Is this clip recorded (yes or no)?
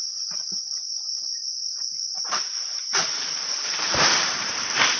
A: no